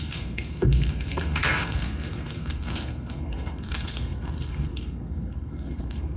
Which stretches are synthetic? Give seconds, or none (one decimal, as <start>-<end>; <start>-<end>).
0.0-6.2